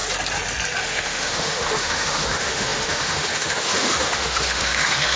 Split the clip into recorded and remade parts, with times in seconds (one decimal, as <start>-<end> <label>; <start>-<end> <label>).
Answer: 0.0-0.8 recorded; 0.8-5.2 remade